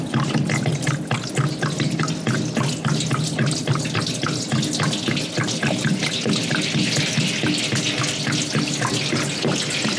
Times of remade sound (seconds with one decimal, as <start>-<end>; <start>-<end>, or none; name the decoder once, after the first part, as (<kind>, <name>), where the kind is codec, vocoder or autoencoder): none